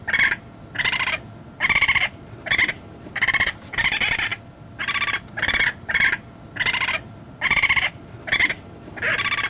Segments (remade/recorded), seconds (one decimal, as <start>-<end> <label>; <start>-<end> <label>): 0.0-9.5 remade